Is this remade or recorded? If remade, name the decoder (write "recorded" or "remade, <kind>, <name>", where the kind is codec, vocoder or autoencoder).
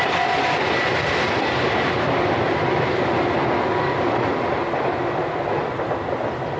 recorded